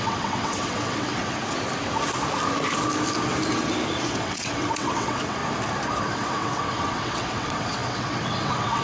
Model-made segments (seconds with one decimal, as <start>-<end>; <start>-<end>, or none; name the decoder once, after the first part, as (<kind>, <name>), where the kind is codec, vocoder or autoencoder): 0.0-1.4 (vocoder, WaveNeXt); 3.9-5.4; 6.0-8.8